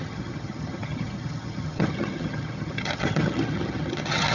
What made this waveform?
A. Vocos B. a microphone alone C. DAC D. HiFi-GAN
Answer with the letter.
D